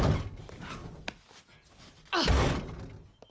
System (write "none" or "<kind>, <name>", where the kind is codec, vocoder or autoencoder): none